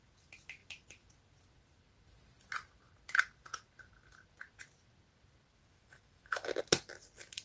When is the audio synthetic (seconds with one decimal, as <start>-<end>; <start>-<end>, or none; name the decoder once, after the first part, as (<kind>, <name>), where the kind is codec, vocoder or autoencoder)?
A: 5.6-6.6 (autoencoder, DAC-VAE)